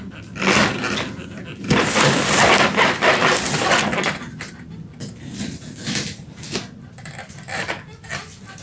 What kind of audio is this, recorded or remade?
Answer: recorded